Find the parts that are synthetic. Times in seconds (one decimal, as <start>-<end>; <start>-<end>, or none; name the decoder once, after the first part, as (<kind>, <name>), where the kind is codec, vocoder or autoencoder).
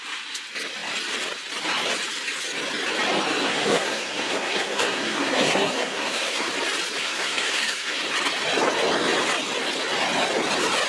3.4-6.5 (codec, SNAC); 7.0-8.0